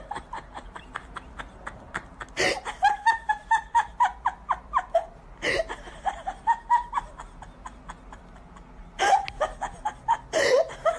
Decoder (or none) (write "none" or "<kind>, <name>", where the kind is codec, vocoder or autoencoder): none